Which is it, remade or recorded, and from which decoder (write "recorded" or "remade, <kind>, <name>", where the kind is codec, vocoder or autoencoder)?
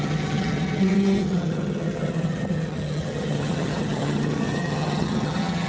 remade, vocoder, HiFi-GAN